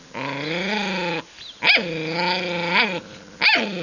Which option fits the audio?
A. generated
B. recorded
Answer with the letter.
B